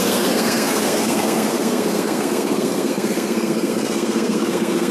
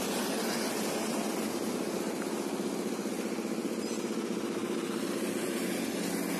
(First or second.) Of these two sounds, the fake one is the first